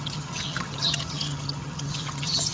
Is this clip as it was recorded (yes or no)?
no